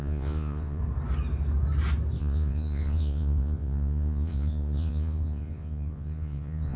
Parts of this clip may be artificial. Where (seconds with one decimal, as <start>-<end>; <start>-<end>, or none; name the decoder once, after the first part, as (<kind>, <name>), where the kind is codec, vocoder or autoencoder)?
0.0-0.8 (vocoder, Vocos); 2.2-6.8